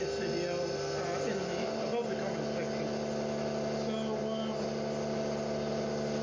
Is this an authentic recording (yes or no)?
yes